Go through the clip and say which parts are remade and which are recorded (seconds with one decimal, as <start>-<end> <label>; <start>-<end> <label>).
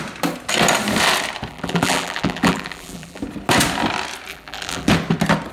0.0-1.5 recorded; 1.5-3.2 remade; 3.2-4.3 recorded; 4.3-4.9 remade; 4.9-5.5 recorded